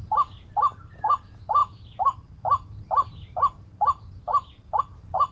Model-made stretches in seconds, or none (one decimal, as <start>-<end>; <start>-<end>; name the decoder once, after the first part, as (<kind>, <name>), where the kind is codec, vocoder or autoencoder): 0.0-0.7 (vocoder, BigVGAN v2); 1.2-5.3